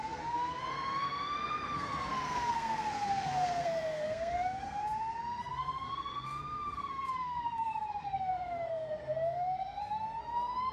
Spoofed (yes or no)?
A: yes